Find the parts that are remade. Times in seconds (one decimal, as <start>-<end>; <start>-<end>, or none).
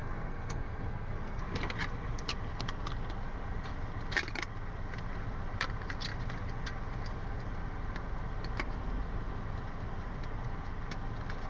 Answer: 0.0-1.4